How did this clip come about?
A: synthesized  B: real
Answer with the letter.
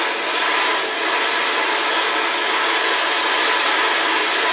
B